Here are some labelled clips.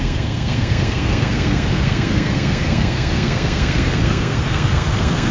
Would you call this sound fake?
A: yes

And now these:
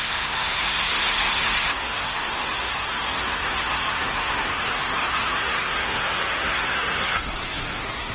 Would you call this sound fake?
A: yes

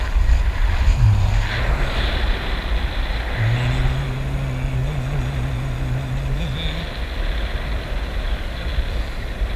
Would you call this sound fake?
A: no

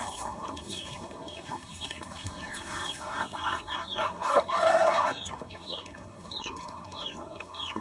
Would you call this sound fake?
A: yes